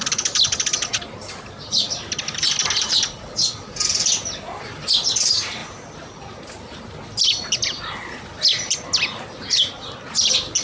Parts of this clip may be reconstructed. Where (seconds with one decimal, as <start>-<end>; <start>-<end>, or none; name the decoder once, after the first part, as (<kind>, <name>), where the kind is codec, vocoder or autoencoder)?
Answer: none